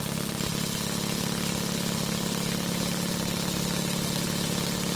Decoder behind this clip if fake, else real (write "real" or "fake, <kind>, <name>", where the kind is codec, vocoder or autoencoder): real